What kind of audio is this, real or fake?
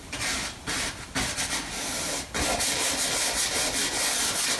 real